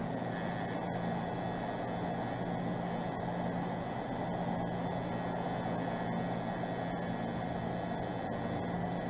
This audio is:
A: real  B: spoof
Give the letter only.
A